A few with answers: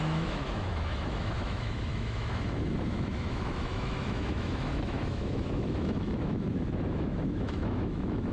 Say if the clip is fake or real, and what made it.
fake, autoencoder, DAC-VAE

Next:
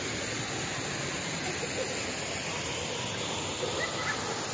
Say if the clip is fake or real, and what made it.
real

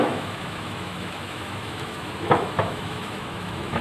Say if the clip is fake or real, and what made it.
fake, autoencoder, DAC-VAE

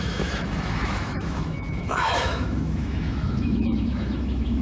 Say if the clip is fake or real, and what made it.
fake, autoencoder, DAC-VAE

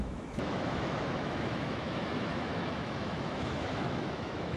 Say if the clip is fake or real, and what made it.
fake, autoencoder, DAC-VAE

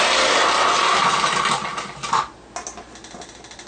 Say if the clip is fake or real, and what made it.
real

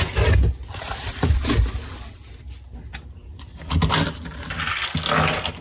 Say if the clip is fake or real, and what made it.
real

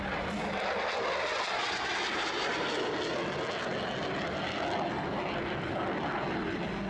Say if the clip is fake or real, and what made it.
real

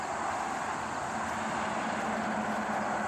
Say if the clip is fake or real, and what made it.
real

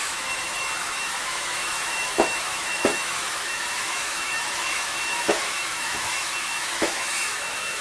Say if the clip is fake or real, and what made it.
fake, autoencoder, DAC-VAE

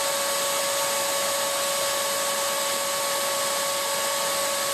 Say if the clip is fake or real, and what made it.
real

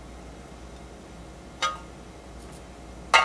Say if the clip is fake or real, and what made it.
real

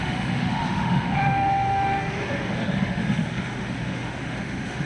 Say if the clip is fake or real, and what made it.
fake, autoencoder, DAC-VAE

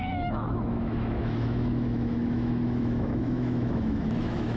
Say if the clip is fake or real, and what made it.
fake, autoencoder, DAC-VAE